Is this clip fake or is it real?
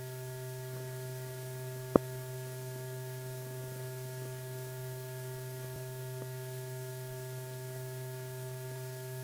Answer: fake